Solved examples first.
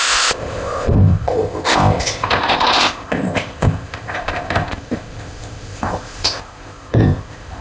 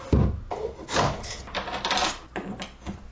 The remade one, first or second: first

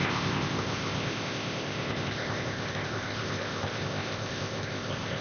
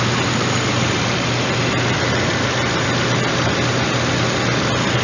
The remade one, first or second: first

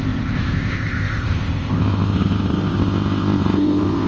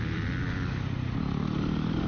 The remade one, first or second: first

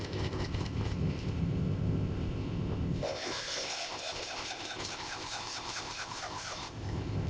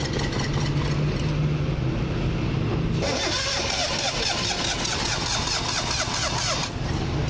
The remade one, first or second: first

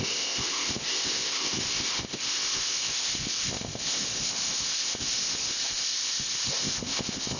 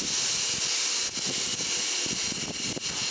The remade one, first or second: first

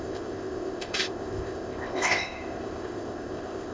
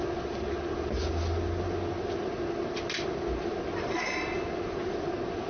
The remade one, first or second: first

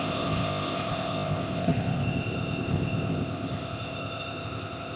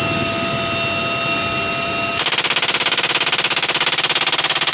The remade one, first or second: first